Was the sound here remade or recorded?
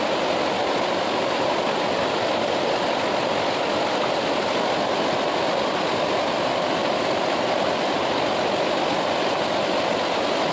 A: recorded